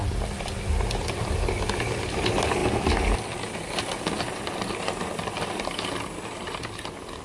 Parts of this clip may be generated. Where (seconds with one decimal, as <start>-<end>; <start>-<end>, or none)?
none